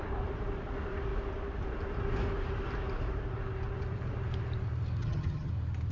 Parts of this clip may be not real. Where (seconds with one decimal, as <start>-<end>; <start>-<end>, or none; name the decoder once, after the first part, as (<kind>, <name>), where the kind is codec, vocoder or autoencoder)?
5.0-5.5 (vocoder, HiFi-GAN)